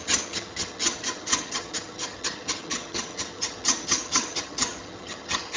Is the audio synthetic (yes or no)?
yes